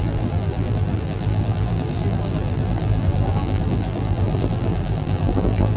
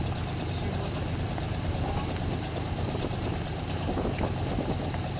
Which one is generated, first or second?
first